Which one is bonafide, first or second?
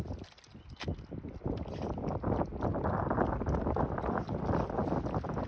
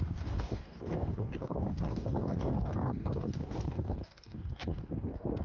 first